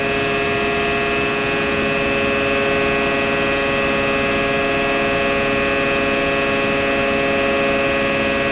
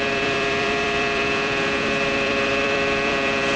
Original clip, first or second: first